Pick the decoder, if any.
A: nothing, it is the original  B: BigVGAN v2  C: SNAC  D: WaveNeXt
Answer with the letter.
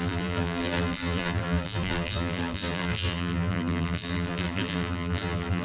B